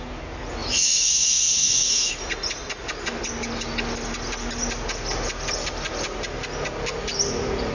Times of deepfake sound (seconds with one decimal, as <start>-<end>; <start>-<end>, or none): 0.6-2.1